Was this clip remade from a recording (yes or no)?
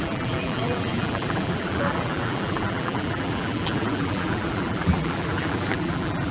yes